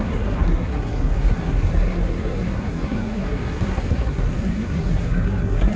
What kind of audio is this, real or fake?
fake